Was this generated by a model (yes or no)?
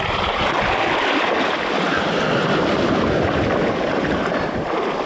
no